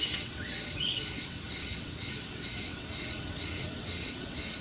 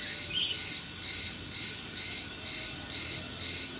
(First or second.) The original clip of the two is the second